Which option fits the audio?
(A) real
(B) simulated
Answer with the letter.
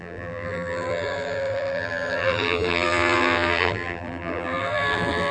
B